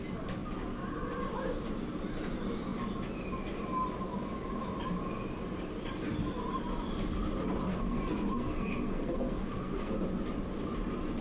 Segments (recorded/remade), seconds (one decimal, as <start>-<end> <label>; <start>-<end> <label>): 0.0-7.7 recorded; 7.7-9.9 remade; 9.9-11.2 recorded